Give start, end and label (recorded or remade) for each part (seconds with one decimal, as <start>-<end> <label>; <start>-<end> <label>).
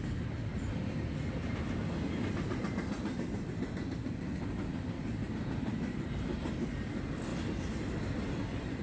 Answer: 0.0-8.8 recorded